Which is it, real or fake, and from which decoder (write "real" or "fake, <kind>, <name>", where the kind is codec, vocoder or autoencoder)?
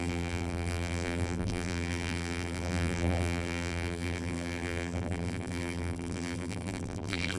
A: fake, vocoder, BigVGAN v2